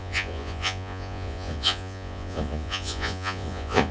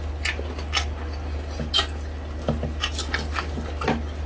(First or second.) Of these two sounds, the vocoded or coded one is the first